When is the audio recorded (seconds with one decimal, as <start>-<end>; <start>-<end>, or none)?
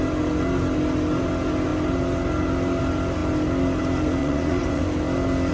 0.0-4.2; 4.8-5.5